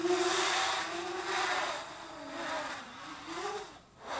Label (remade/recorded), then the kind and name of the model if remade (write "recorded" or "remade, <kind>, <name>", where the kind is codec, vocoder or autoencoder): recorded